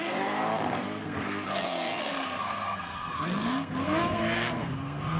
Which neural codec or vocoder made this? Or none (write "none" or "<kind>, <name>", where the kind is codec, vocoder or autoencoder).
codec, SNAC